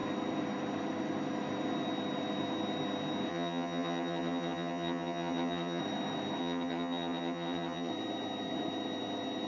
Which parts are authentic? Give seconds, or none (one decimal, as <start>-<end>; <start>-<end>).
0.0-3.3; 5.8-6.4; 7.9-9.5